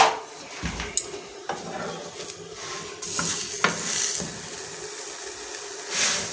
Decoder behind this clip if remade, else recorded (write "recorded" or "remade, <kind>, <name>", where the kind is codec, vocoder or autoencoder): recorded